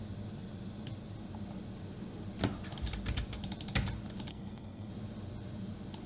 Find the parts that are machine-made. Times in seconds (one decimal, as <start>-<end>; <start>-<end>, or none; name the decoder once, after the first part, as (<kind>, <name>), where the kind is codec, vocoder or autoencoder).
4.3-4.9 (codec, SNAC)